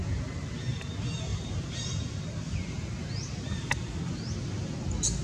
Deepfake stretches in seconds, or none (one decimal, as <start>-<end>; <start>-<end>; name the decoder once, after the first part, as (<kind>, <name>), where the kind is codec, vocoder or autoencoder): 1.3-4.0 (vocoder, BigVGAN v2)